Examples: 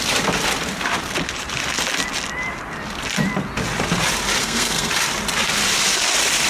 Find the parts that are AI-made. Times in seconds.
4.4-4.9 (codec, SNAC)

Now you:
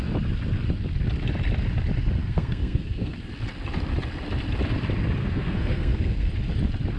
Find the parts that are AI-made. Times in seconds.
2.2-3.3 (codec, SNAC); 5.2-6.3